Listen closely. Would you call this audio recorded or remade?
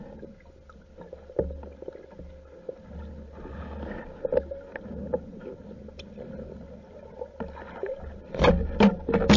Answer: recorded